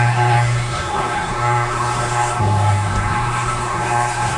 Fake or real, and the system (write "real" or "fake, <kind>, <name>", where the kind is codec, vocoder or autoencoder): fake, codec, SNAC